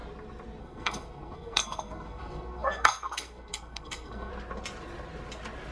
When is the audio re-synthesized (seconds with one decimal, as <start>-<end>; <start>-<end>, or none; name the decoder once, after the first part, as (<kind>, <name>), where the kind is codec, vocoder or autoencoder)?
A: 0.6-4.3 (codec, SNAC)